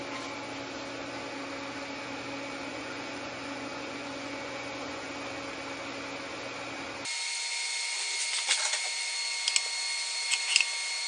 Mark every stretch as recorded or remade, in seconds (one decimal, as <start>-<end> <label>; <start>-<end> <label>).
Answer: 0.0-2.7 recorded; 2.7-5.1 remade; 5.1-11.1 recorded

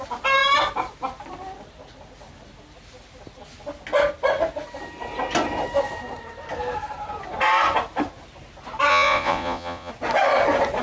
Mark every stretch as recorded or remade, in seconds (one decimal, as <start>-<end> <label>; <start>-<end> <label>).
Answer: 0.0-8.9 recorded; 8.9-9.9 remade; 9.9-10.8 recorded

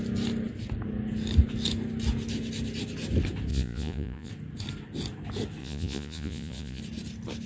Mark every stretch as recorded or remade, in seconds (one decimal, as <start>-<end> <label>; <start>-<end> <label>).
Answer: 0.0-3.5 recorded; 3.5-4.3 remade; 4.3-5.6 recorded; 5.6-6.8 remade; 6.8-7.5 recorded